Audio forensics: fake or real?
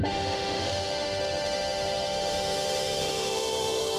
fake